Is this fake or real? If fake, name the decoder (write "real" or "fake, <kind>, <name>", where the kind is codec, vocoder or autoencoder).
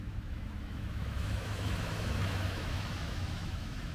fake, autoencoder, DAC-VAE